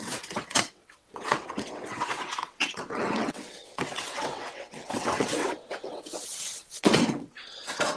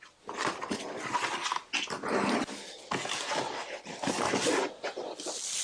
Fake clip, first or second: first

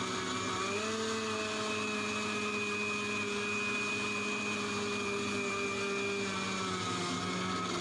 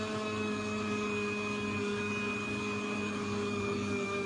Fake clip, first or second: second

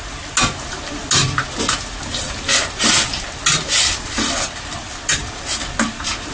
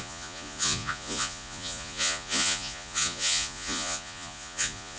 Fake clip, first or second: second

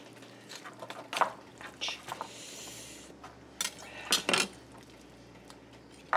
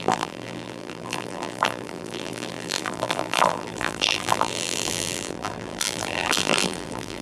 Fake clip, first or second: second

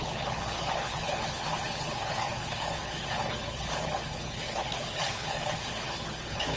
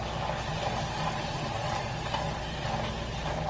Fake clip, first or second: first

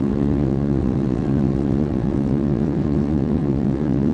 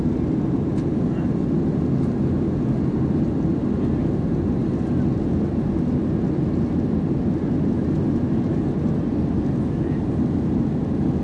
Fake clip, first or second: first